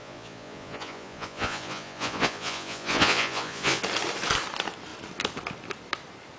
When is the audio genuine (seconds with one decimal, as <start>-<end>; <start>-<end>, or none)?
3.8-6.4